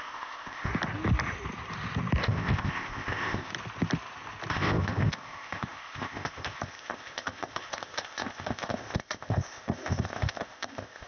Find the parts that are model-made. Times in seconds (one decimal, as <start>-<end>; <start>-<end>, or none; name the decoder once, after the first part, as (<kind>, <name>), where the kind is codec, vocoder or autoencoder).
0.0-0.7 (codec, ZipCodec); 2.2-3.5; 4.5-11.1